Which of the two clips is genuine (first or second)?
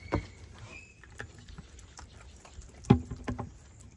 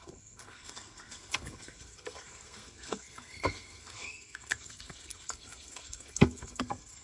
first